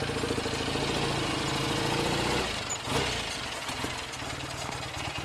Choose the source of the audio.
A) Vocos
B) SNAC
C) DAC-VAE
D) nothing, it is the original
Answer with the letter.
D